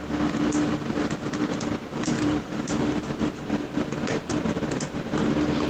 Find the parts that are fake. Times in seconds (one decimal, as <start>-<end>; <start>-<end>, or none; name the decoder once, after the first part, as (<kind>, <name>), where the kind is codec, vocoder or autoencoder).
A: 1.9-5.3 (vocoder, BigVGAN v2)